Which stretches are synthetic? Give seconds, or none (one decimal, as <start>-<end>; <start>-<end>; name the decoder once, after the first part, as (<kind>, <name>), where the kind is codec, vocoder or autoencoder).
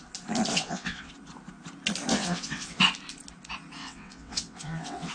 0.5-1.1 (vocoder, WaveNeXt); 2.1-2.8; 3.8-5.1